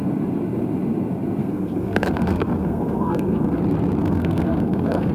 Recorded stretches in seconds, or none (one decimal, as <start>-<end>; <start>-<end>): 0.0-1.4; 3.6-4.0